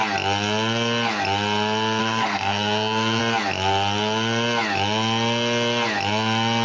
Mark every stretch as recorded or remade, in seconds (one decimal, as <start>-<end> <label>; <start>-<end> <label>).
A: 0.0-2.0 recorded; 2.0-3.2 remade; 3.2-6.6 recorded